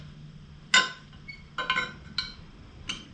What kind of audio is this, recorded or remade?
recorded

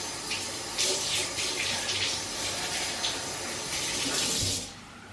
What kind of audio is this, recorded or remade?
recorded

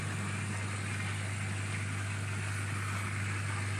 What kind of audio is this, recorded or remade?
recorded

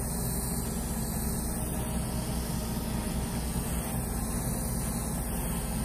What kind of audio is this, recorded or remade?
recorded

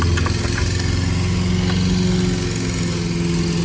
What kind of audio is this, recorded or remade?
recorded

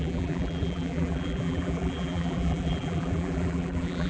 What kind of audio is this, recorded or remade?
remade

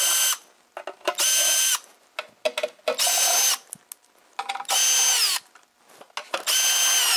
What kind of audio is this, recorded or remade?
recorded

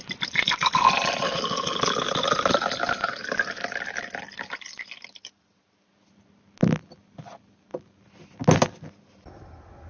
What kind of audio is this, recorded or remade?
recorded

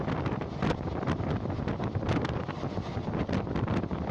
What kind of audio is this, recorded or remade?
remade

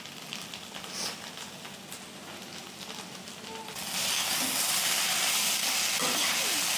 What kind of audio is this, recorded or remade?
recorded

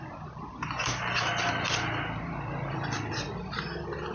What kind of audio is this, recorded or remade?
recorded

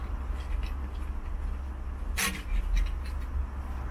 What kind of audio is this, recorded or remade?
recorded